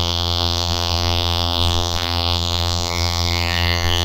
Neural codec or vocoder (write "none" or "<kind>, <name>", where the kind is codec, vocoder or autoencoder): vocoder, BigVGAN v2